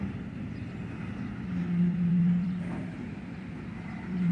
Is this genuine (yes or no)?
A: no